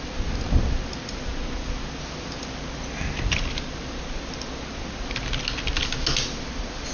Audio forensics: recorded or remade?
recorded